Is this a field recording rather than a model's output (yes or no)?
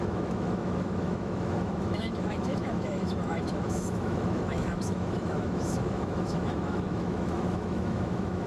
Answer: no